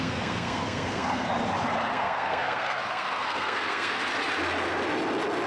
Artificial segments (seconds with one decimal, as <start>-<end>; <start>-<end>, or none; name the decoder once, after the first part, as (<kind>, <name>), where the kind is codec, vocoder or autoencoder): 0.0-1.3 (codec, SNAC); 1.9-4.0